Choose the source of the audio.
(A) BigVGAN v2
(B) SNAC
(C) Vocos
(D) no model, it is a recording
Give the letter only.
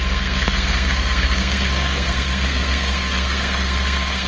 B